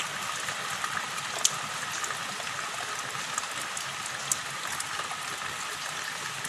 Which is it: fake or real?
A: real